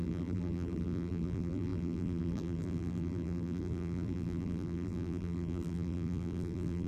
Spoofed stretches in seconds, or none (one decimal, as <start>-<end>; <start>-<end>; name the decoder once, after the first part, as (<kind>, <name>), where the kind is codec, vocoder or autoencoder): 0.0-6.9 (vocoder, BigVGAN v2)